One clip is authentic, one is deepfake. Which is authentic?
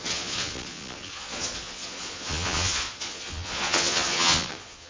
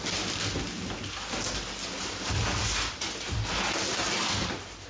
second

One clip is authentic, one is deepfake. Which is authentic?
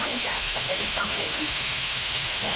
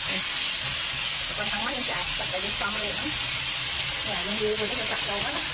second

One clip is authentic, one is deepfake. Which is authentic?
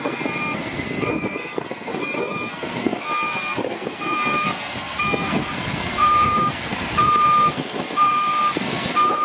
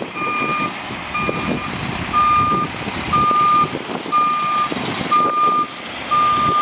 second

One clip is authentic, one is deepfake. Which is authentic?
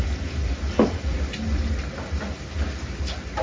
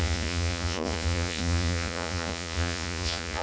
first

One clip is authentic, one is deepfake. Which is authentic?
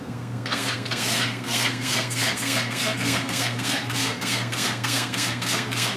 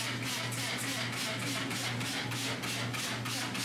second